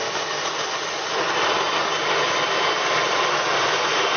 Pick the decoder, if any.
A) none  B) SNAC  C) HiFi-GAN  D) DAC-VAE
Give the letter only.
A